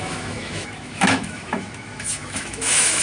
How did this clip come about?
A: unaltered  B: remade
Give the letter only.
B